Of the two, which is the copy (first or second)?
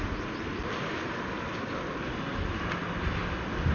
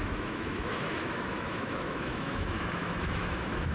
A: second